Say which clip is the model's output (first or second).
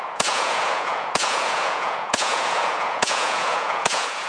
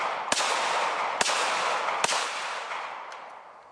first